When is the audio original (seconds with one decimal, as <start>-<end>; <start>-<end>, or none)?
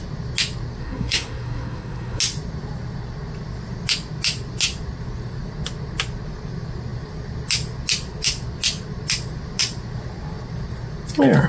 0.0-0.8; 2.2-11.5